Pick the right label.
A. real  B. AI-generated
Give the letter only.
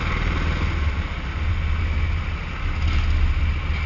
A